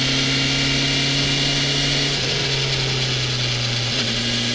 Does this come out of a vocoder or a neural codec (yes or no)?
no